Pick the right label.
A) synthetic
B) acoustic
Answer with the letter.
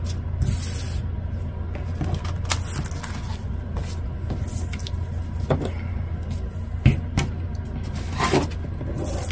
B